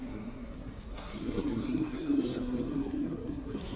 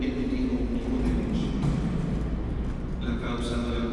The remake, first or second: first